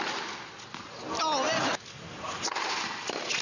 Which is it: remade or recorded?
recorded